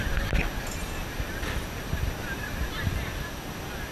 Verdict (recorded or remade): recorded